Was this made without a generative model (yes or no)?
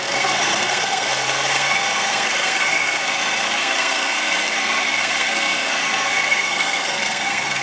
no